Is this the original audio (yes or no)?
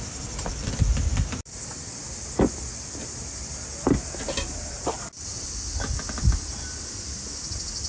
yes